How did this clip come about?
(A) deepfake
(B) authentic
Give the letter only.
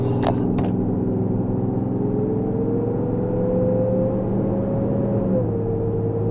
B